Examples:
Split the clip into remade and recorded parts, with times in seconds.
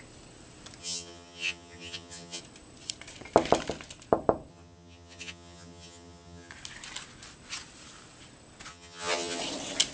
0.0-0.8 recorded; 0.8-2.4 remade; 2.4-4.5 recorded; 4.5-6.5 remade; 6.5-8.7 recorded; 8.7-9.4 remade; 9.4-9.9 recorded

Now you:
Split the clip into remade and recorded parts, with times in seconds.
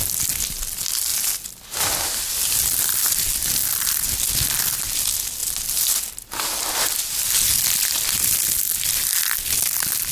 0.0-10.1 recorded